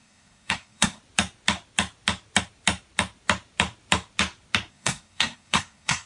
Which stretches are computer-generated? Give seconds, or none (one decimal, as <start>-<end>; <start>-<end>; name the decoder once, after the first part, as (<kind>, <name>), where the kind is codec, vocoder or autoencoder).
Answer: 0.0-1.0 (codec, SNAC); 4.7-6.1